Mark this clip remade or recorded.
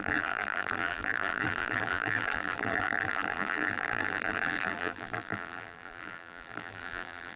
remade